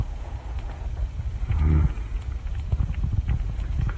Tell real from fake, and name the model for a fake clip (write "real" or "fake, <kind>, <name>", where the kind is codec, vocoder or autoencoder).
fake, vocoder, Vocos